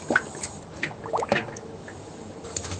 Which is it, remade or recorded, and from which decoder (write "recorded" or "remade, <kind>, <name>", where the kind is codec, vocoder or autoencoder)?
remade, autoencoder, DAC-VAE